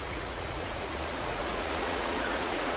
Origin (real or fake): fake